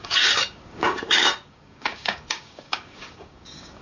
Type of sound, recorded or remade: remade